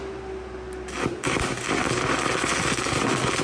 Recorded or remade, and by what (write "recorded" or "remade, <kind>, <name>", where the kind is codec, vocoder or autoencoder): recorded